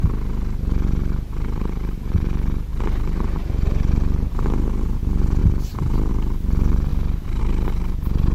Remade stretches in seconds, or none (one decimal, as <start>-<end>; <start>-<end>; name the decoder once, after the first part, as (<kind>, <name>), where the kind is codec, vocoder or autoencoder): 2.7-4.3 (vocoder, BigVGAN v2); 5.4-6.1; 6.9-7.4